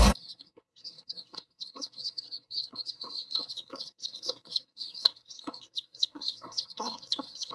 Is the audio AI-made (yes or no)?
yes